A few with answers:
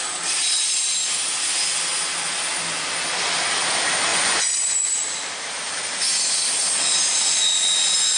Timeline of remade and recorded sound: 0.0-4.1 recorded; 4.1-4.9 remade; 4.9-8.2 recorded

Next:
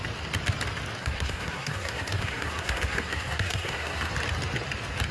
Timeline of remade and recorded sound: 0.0-1.0 recorded; 1.0-4.1 remade; 4.1-5.1 recorded